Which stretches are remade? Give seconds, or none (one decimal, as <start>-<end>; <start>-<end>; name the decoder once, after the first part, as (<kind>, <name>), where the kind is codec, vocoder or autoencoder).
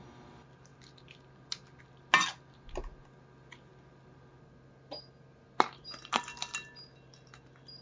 none